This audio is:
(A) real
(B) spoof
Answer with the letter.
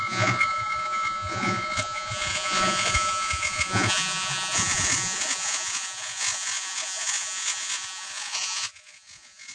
B